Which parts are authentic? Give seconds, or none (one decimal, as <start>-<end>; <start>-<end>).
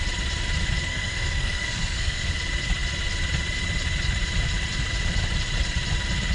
0.0-0.9; 2.3-6.3